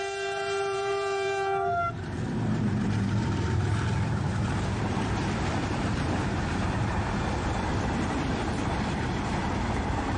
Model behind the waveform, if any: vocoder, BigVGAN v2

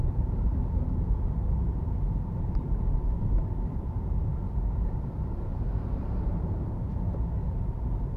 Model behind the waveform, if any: vocoder, BigVGAN v2